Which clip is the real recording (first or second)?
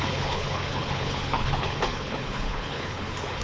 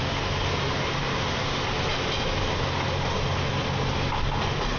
second